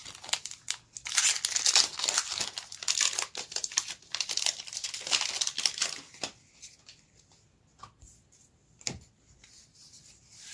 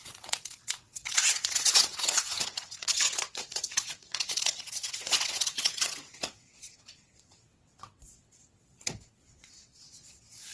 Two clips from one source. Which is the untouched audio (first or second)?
first